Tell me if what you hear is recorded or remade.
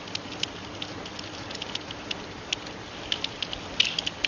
recorded